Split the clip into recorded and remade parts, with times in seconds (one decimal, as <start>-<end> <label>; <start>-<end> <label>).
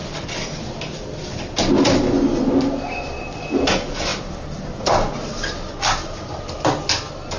0.0-7.4 recorded